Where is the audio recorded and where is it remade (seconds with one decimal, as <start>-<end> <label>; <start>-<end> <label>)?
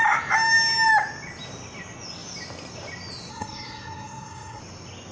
0.0-3.3 recorded; 3.3-4.6 remade; 4.6-5.1 recorded